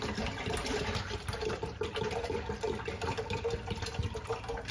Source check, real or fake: real